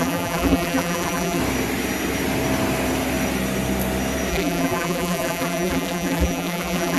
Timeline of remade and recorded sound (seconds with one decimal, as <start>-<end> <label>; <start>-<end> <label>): 0.0-1.4 remade; 1.4-4.3 recorded; 4.3-7.0 remade